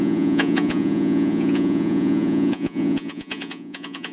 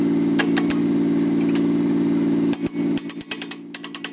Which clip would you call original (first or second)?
second